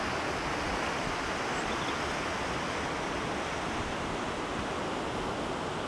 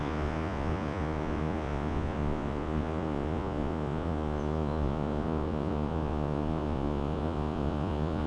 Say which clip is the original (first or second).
first